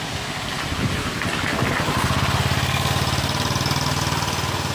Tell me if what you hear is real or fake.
real